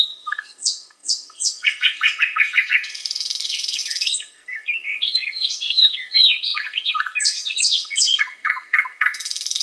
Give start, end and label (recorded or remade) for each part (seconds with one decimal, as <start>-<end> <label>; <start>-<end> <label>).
0.0-9.6 remade